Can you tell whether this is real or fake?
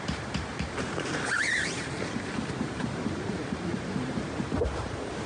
fake